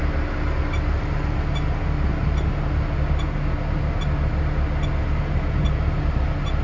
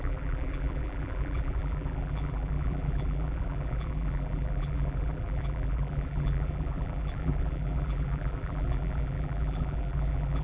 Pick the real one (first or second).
first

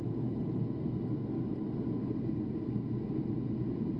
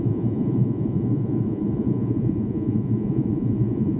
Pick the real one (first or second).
first